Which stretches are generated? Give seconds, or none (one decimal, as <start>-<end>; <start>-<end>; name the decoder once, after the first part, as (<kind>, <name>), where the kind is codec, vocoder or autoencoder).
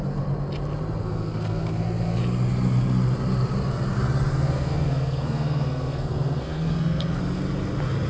1.0-2.2 (codec, SNAC); 4.3-7.2